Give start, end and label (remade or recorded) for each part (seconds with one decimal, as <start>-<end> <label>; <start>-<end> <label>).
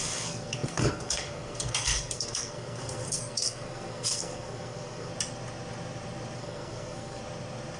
0.0-5.1 remade; 5.1-6.4 recorded; 6.4-7.2 remade; 7.2-7.8 recorded